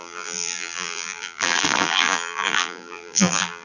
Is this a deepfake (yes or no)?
yes